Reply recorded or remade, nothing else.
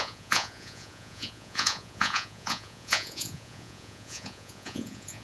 remade